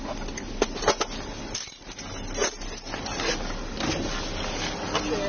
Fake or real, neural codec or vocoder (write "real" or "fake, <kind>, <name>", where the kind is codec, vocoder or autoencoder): real